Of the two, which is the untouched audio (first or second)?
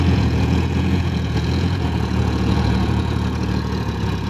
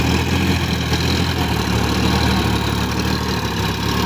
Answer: second